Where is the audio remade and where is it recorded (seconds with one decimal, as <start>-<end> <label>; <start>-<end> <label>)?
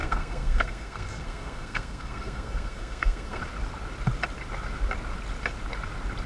0.0-3.4 remade; 3.4-6.3 recorded